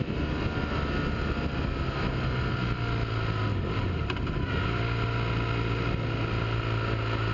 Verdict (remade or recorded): recorded